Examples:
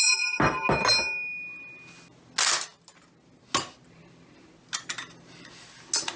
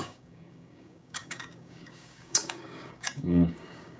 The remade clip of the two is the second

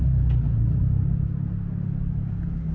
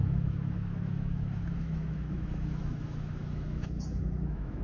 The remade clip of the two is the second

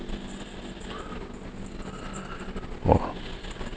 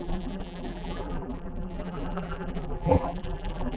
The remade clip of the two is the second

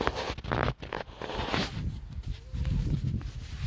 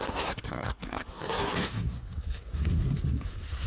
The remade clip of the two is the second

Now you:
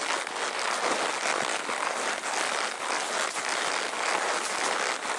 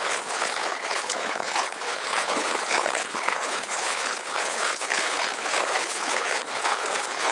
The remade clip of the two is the second